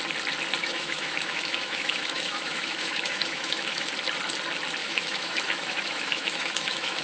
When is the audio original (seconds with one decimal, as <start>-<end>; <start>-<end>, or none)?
0.0-0.6; 3.9-4.8